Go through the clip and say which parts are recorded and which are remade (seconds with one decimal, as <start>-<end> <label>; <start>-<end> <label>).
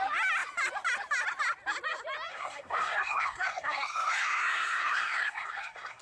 0.0-2.3 recorded; 2.3-6.0 remade